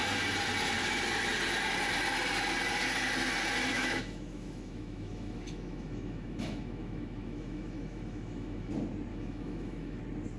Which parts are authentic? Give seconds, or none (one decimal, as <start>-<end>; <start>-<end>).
0.0-3.7; 8.7-9.1; 10.0-10.4